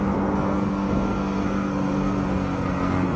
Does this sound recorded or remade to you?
remade